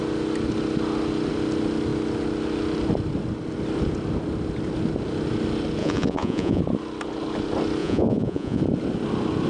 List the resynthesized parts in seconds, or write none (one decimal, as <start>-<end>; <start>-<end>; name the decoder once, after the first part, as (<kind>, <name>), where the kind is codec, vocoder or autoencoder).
5.8-6.6 (vocoder, Vocos); 7.8-8.6